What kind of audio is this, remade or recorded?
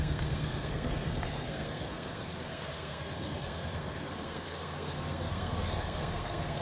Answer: remade